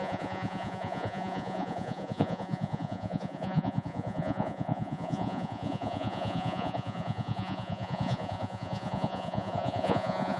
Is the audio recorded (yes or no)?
no